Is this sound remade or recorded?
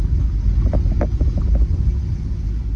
recorded